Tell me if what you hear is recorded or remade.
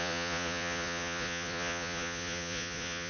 remade